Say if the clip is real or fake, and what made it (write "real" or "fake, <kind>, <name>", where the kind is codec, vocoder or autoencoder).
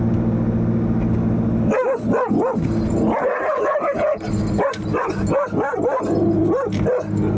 real